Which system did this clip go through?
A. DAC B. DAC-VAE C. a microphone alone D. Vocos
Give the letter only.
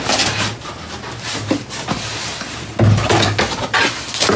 C